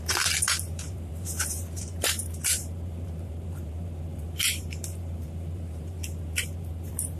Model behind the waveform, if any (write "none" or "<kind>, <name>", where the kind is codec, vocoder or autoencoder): vocoder, BigVGAN v2